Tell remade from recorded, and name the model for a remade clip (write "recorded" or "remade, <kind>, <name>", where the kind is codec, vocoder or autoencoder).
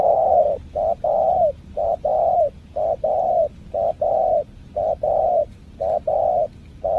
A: recorded